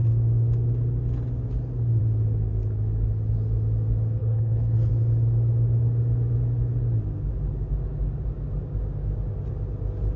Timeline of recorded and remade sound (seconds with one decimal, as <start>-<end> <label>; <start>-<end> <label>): 0.0-4.2 recorded; 4.2-4.9 remade; 4.9-10.2 recorded